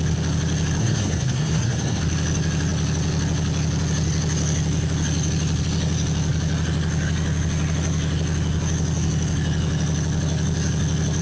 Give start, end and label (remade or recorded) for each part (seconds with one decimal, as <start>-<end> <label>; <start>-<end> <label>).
0.0-0.8 recorded; 0.8-2.0 remade; 2.0-11.2 recorded